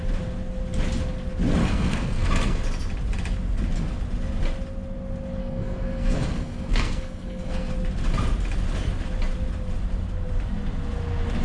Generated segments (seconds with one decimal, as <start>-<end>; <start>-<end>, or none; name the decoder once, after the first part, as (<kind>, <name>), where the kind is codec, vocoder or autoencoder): 1.6-2.6 (codec, SNAC); 5.4-7.7